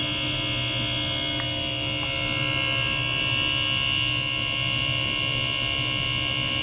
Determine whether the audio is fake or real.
real